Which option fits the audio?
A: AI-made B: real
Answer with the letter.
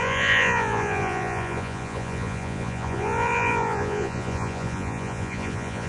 A